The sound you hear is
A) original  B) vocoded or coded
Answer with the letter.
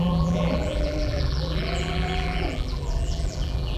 B